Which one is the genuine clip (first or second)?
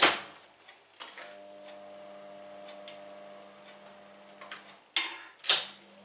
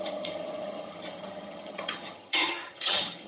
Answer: first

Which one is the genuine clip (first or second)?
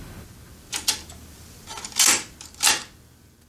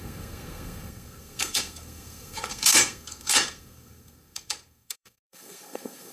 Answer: first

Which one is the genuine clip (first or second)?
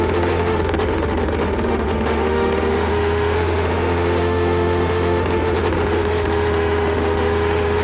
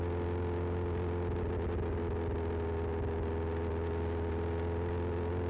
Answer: second